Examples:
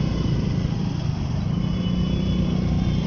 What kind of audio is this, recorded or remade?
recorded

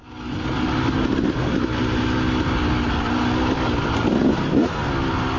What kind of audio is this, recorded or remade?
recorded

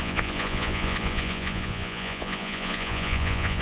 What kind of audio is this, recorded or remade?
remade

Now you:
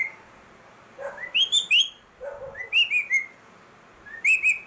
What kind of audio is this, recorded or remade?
recorded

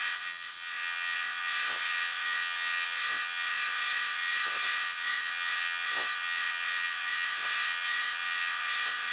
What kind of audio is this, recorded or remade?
remade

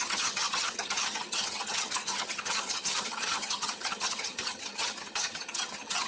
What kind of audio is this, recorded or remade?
remade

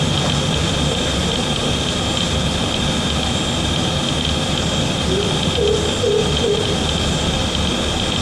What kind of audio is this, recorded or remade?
recorded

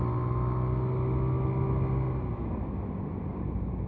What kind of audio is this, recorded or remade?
recorded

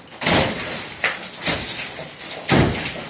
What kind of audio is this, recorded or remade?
recorded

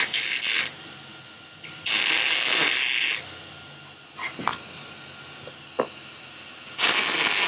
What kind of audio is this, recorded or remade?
recorded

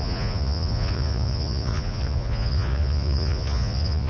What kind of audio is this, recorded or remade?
remade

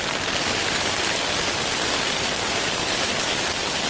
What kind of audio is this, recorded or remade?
recorded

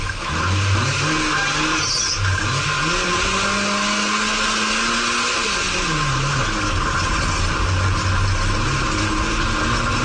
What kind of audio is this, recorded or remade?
recorded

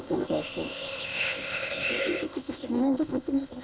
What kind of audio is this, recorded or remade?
remade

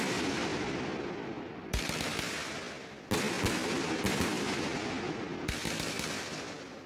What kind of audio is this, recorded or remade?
recorded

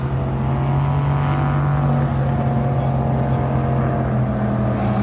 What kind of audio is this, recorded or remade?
recorded